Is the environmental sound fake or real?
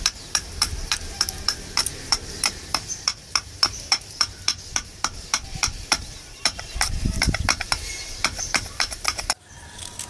fake